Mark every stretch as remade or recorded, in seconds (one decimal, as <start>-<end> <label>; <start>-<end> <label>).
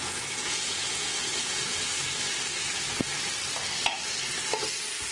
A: 0.0-1.9 remade; 1.9-5.1 recorded